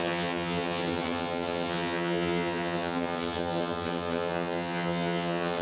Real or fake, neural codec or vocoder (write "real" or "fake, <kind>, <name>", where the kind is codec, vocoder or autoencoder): fake, vocoder, HiFi-GAN